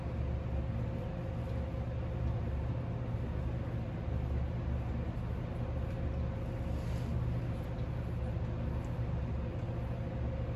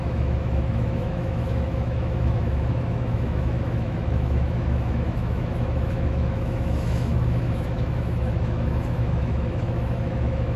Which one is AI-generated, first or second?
second